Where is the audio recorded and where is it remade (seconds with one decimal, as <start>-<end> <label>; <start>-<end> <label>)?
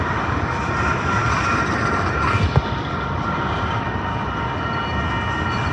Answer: 0.0-1.2 recorded; 1.2-4.4 remade; 4.4-5.7 recorded